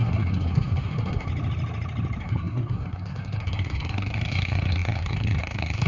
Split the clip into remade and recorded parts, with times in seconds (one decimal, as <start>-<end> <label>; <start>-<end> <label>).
0.0-1.3 remade; 1.3-2.2 recorded; 2.2-5.9 remade